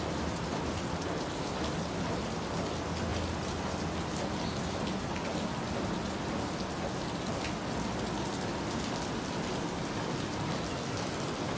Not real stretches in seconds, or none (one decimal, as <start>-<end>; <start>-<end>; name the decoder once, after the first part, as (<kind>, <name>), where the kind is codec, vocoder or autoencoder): none